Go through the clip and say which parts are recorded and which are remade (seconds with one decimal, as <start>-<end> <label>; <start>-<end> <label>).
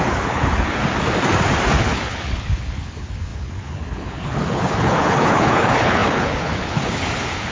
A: 0.0-0.8 remade; 0.8-1.8 recorded; 1.8-7.5 remade